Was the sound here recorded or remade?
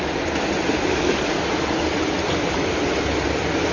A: recorded